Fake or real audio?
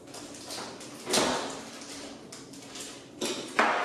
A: real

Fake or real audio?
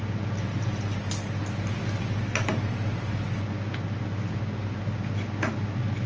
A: real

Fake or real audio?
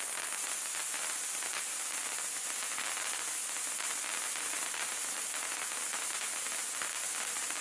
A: real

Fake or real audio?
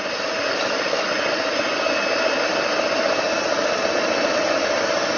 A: real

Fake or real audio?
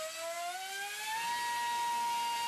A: real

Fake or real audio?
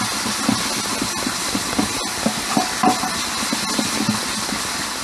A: real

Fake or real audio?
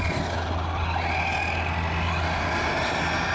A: real